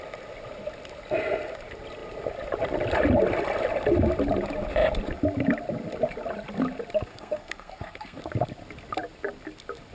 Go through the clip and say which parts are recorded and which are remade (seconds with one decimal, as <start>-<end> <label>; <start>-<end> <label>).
0.0-7.1 recorded; 7.1-8.2 remade; 8.2-9.9 recorded